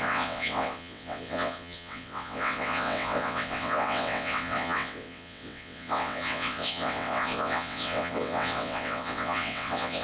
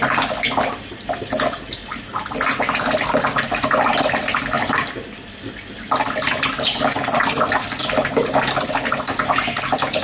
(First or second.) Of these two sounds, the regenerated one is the first